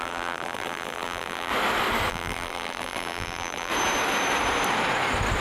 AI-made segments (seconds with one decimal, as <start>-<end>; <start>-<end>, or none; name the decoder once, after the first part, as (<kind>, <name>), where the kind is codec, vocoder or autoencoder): 0.0-1.5 (vocoder, BigVGAN v2); 2.1-3.7